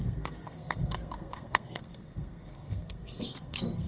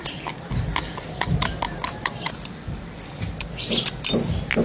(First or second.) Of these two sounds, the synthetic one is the first